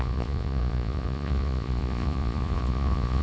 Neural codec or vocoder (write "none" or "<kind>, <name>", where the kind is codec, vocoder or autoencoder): vocoder, Vocos